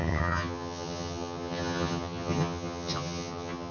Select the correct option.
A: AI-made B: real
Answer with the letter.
A